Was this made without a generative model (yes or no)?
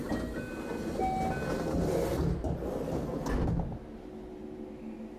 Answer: yes